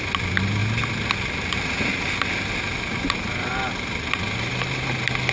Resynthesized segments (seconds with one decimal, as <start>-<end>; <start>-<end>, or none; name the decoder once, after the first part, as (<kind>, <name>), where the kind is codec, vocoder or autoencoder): none